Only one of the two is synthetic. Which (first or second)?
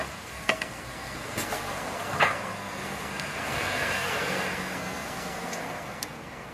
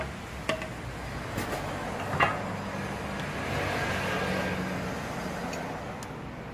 first